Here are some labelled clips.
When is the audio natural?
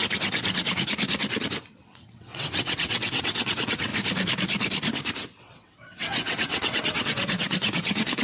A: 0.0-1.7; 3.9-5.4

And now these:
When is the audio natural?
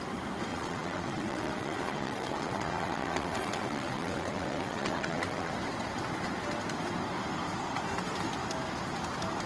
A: 0.0-0.5; 5.5-9.5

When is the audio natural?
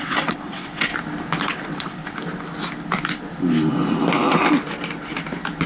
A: 0.9-1.4; 2.0-5.7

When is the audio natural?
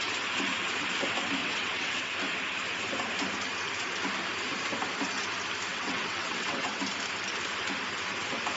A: 0.0-1.4; 2.1-5.7; 6.8-8.6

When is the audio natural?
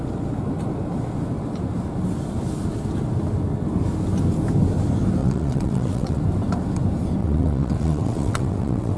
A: 0.0-5.2; 6.2-7.2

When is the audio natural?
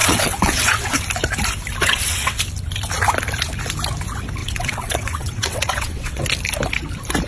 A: 1.0-1.8; 2.4-4.4; 6.2-7.3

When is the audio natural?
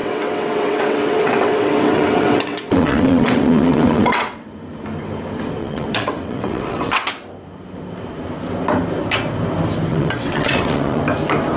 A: 4.5-5.6; 7.1-9.9; 11.0-11.6